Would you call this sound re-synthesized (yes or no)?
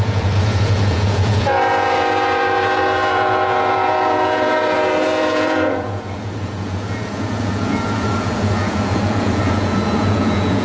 yes